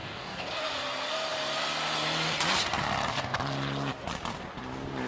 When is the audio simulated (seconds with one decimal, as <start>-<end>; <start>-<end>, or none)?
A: 0.0-0.5